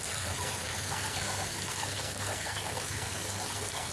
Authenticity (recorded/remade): remade